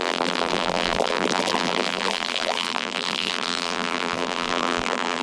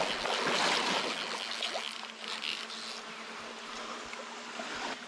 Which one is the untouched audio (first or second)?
second